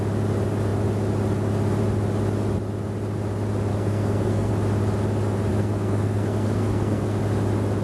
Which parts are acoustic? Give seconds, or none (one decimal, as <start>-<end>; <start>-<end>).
0.0-3.7; 4.5-5.5; 7.2-7.8